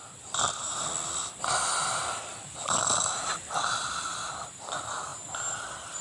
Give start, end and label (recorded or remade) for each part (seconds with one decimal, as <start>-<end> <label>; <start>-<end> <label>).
0.0-6.0 recorded